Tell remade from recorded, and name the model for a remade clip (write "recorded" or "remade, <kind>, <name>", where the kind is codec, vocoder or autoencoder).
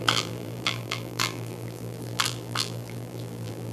remade, vocoder, BigVGAN v2